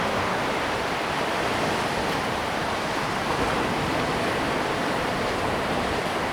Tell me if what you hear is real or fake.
fake